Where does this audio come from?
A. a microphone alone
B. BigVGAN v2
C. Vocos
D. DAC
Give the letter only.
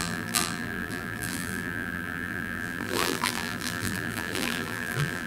B